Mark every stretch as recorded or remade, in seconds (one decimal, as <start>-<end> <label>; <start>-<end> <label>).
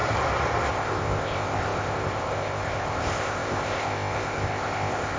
0.0-0.7 recorded; 0.7-5.2 remade